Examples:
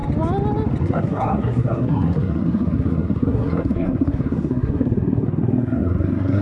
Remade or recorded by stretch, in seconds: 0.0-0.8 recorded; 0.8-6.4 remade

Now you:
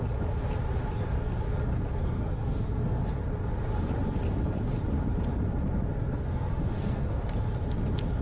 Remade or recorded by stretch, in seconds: 0.0-2.0 recorded; 2.0-3.0 remade; 3.0-5.9 recorded; 5.9-7.2 remade; 7.2-8.2 recorded

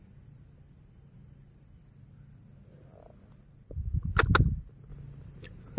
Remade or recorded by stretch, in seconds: 0.0-5.8 recorded

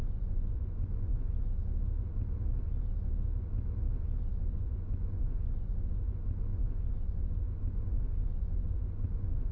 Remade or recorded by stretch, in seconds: 0.0-1.6 remade; 1.6-4.3 recorded; 4.3-9.5 remade

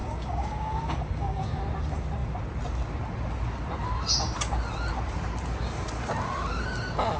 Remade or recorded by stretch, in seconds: 0.0-1.6 remade; 1.6-7.2 recorded

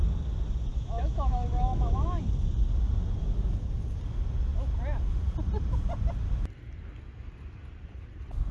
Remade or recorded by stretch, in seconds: 0.0-0.7 recorded; 0.7-2.2 remade; 2.2-8.5 recorded

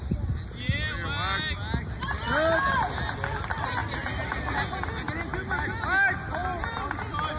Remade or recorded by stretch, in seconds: 0.0-7.4 recorded